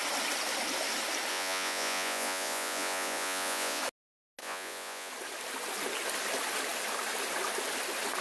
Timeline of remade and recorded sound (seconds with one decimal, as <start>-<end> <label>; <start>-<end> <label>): 0.0-1.3 recorded; 1.3-3.8 remade; 3.8-4.4 recorded; 4.4-5.1 remade; 5.1-8.2 recorded

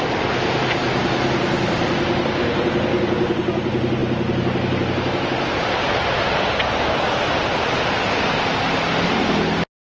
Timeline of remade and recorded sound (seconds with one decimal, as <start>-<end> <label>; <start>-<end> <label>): 0.0-9.9 recorded

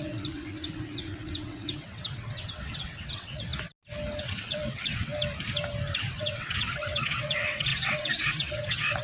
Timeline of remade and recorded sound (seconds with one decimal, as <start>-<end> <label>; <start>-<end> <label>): 0.0-3.5 remade; 3.5-4.2 recorded; 4.2-5.1 remade; 5.1-6.1 recorded; 6.1-9.0 remade

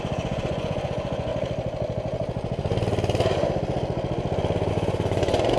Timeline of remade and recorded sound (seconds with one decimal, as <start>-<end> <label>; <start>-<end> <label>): 0.0-1.3 remade; 1.3-4.7 recorded; 4.7-5.6 remade

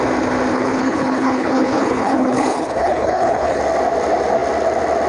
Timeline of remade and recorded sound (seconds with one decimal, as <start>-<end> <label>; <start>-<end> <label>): 0.0-0.5 recorded; 0.5-3.6 remade; 3.6-5.1 recorded

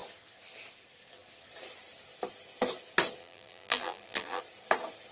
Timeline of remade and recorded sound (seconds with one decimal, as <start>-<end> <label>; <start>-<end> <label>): 0.0-3.2 recorded; 3.2-4.4 remade; 4.4-5.1 recorded

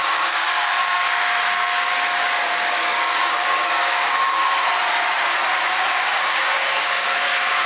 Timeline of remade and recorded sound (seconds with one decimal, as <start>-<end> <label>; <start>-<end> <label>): 0.0-4.4 remade; 4.4-5.9 recorded; 5.9-7.7 remade